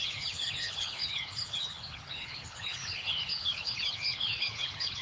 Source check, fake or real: fake